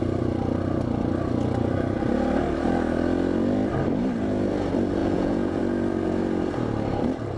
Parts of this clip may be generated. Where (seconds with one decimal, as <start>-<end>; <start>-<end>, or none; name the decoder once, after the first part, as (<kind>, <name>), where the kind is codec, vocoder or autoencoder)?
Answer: 5.0-5.6 (vocoder, Vocos)